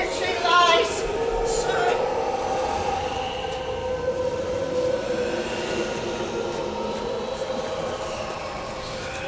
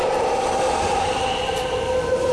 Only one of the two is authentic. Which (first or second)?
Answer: first